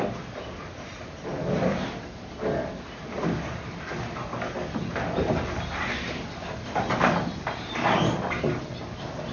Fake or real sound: real